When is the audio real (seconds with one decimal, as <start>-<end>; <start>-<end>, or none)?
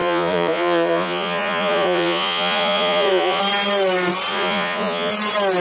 3.4-4.3; 5.1-5.6